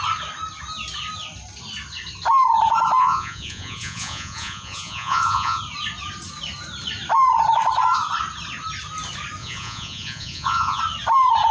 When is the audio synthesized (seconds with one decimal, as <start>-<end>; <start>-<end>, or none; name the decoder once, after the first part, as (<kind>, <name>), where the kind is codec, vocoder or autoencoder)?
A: 3.0-5.6 (vocoder, Vocos); 9.4-10.8